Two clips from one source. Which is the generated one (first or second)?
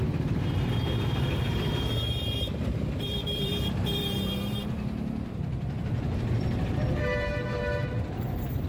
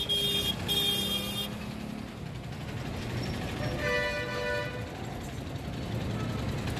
first